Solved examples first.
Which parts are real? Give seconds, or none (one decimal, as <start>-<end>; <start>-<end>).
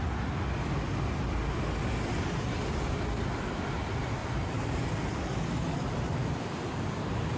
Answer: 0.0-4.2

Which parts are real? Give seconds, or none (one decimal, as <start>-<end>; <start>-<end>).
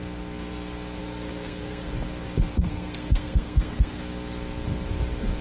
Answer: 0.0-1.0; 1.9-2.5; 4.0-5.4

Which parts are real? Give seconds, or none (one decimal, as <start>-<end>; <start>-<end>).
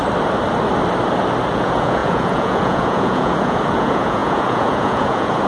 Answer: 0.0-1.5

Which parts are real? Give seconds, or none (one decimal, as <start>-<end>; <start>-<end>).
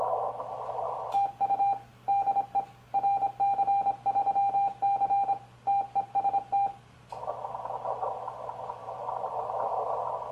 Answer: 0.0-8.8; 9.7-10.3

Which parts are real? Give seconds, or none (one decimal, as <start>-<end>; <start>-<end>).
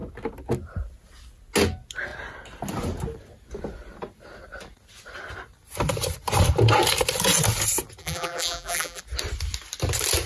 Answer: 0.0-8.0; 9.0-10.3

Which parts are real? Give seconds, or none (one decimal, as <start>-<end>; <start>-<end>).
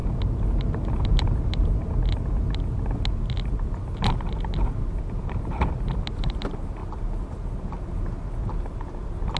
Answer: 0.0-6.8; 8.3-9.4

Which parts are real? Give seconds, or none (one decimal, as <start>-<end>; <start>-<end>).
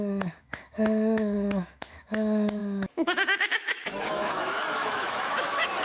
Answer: none